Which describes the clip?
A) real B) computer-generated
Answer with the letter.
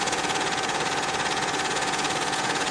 B